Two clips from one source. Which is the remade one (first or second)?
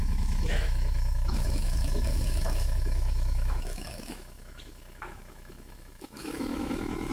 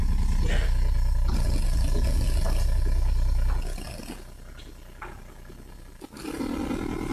first